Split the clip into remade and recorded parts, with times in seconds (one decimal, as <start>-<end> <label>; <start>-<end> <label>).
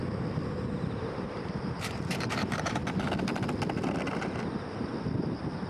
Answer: 0.0-1.0 recorded; 1.0-2.8 remade; 2.8-4.2 recorded; 4.2-4.9 remade; 4.9-5.7 recorded